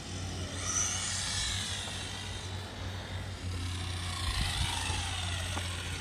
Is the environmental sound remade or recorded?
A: recorded